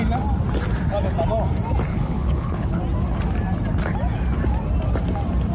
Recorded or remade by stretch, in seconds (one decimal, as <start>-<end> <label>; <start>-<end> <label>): 0.0-1.9 recorded; 1.9-2.8 remade; 2.8-5.5 recorded